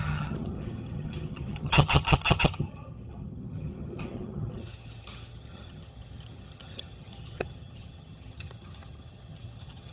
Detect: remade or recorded remade